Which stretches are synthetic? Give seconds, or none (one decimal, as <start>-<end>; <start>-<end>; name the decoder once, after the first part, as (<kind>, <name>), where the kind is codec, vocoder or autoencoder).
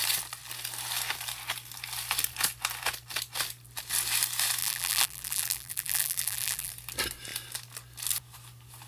4.6-6.7 (vocoder, BigVGAN v2)